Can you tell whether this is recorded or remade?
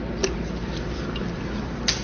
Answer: recorded